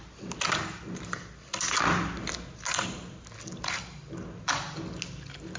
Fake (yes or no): no